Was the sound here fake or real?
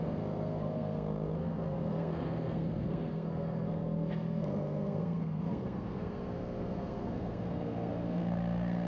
fake